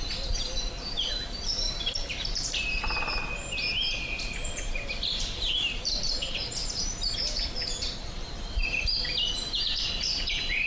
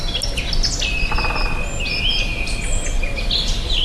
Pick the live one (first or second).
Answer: second